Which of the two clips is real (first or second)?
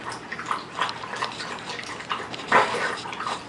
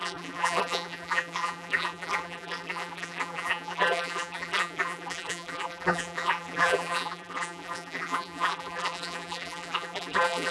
first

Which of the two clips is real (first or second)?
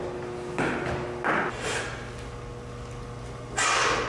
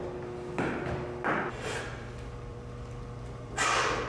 first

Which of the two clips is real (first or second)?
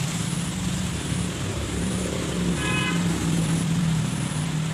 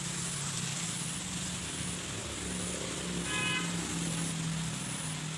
second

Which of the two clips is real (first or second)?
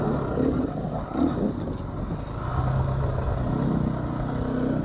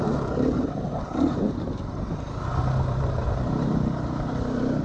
first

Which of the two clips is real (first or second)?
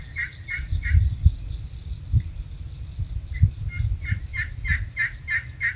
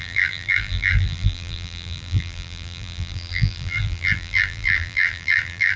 first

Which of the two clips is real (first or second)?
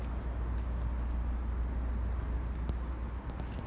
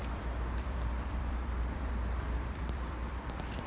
first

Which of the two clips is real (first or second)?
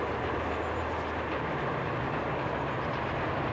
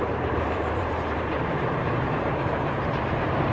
first